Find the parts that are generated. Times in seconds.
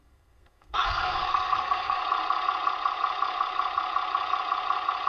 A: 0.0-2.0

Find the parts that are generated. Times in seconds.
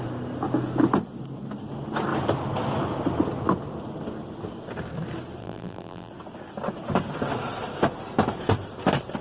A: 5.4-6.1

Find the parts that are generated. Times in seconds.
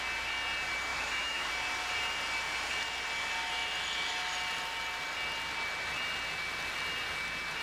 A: 0.9-1.5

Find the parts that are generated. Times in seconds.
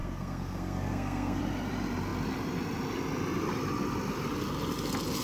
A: 0.0-1.4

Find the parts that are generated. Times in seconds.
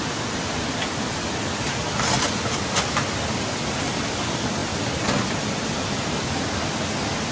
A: none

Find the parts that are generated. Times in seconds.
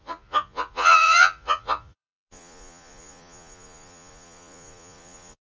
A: 0.0-5.5